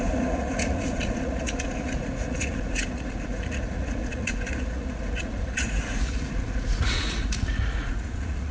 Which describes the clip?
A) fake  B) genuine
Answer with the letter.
A